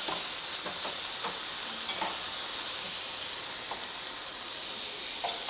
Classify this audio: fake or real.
real